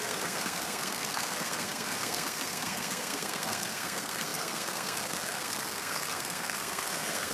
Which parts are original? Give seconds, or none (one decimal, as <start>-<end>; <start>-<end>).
none